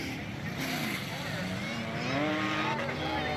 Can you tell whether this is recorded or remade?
recorded